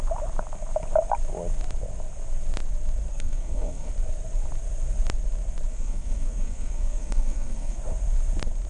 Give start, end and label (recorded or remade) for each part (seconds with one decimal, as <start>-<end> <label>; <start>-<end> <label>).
0.0-3.1 recorded; 3.1-3.9 remade; 3.9-5.7 recorded; 5.7-7.8 remade; 7.8-8.7 recorded